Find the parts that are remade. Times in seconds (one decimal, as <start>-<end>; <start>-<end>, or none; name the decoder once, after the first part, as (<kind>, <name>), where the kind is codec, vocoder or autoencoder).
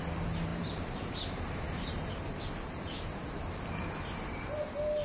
0.5-3.5 (vocoder, BigVGAN v2)